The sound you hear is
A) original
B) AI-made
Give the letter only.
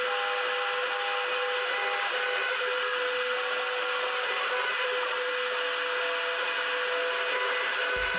A